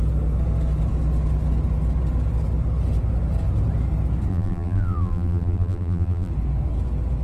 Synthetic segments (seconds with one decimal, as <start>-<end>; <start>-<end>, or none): 4.3-6.3